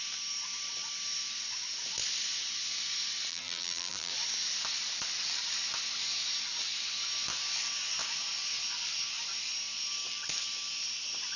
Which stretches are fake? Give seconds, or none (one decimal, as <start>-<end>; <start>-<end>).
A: 3.3-4.1